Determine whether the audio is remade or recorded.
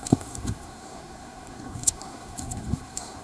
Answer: remade